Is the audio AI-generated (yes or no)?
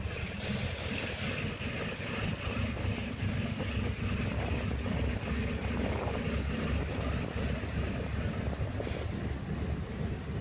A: no